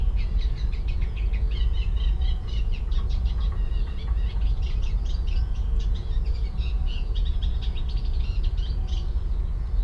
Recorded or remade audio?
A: remade